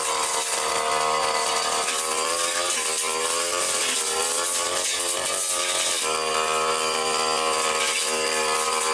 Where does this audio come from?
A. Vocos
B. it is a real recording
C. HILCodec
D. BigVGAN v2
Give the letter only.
B